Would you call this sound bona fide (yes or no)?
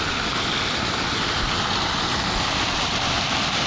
yes